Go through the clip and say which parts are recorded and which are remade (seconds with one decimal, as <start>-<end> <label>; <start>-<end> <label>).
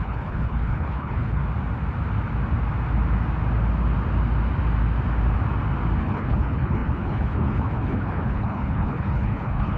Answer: 0.0-1.4 remade; 1.4-6.0 recorded; 6.0-9.8 remade